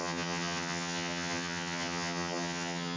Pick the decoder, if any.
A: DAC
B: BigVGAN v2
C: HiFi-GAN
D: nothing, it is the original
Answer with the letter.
C